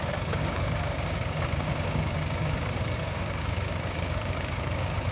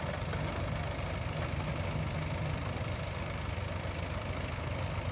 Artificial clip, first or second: first